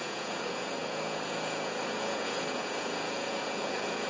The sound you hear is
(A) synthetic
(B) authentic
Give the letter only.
A